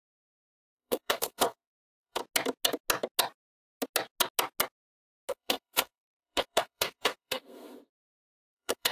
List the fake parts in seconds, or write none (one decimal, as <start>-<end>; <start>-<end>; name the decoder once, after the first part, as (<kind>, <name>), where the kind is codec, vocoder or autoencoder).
0.0-2.2 (codec, SNAC); 5.3-8.9